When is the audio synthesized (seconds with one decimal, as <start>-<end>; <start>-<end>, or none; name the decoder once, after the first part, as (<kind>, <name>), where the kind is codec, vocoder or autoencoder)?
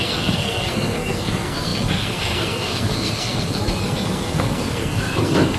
0.0-5.6 (codec, SNAC)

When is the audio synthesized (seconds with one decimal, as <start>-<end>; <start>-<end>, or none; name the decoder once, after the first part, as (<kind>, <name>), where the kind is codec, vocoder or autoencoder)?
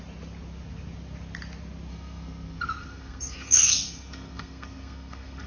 1.9-5.5 (codec, SNAC)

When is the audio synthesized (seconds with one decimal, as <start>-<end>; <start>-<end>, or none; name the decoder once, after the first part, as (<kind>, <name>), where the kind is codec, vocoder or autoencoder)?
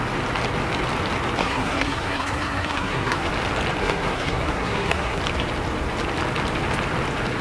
1.4-3.3 (codec, SNAC); 3.8-5.2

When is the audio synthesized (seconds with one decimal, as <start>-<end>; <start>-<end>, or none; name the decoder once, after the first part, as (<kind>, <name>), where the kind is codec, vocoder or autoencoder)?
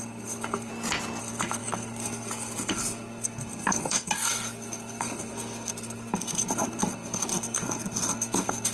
0.0-0.7 (codec, SNAC); 1.2-8.7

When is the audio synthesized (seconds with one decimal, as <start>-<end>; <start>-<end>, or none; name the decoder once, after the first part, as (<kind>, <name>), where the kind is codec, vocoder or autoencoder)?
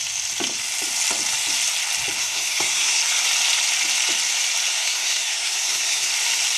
2.2-3.0 (codec, SNAC); 4.7-6.1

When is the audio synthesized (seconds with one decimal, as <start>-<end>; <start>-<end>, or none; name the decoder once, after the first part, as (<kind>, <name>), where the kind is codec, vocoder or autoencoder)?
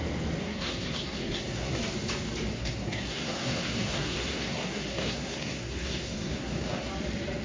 0.4-1.8 (codec, SNAC); 2.5-6.9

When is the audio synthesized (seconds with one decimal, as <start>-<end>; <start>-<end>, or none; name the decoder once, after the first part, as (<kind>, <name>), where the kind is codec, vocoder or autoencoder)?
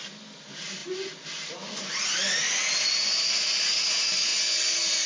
none